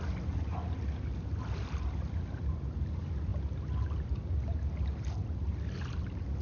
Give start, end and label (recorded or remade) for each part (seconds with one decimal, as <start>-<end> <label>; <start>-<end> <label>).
0.0-6.4 recorded